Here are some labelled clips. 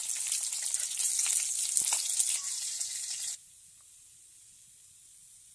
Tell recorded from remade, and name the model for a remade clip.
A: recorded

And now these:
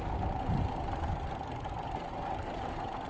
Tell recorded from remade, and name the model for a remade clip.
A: recorded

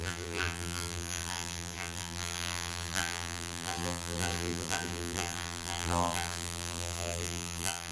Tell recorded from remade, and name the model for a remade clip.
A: remade, vocoder, BigVGAN v2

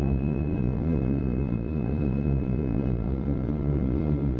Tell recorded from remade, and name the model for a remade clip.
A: remade, vocoder, Vocos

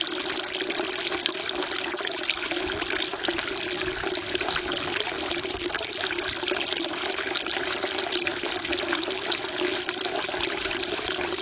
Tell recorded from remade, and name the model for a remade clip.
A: recorded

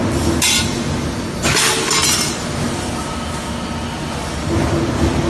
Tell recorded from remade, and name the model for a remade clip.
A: recorded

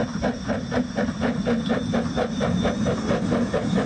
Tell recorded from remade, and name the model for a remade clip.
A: recorded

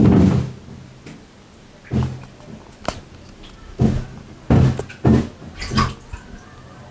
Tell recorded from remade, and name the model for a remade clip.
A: recorded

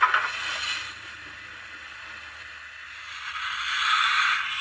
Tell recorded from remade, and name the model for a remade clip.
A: recorded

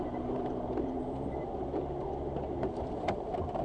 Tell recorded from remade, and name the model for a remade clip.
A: remade, vocoder, BigVGAN v2